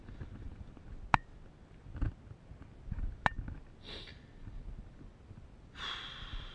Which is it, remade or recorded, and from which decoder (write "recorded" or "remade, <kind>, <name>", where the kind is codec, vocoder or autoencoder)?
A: recorded